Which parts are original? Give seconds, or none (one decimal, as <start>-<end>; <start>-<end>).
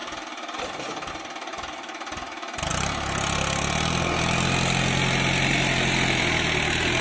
0.0-7.0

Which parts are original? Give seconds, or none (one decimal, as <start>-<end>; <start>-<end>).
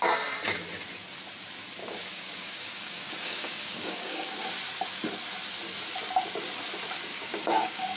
0.0-1.8; 4.5-7.1